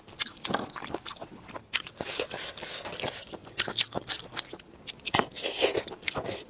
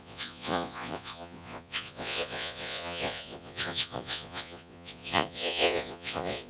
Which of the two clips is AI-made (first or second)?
second